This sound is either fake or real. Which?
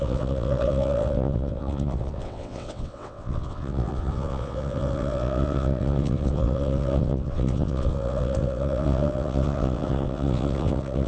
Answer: fake